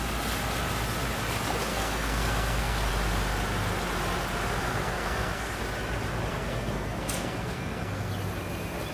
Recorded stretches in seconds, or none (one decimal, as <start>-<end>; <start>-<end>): 0.0-1.7; 2.9-4.6; 5.6-6.3; 8.1-8.9